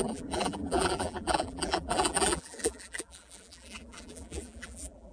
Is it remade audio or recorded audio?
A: remade